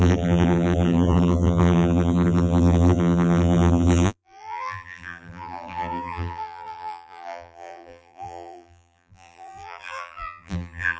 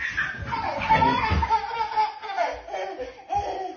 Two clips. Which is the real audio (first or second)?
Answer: second